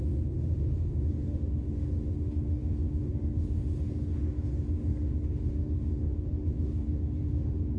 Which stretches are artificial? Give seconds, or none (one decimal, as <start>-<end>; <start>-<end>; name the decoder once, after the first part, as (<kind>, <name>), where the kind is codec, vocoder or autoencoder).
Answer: 0.0-7.8 (autoencoder, DAC-VAE)